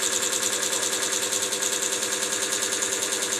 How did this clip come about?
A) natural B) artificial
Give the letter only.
A